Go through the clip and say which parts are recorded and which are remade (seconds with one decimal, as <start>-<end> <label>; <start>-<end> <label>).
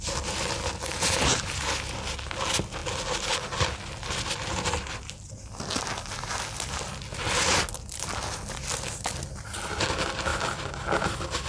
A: 0.0-10.3 recorded; 10.3-11.0 remade; 11.0-11.5 recorded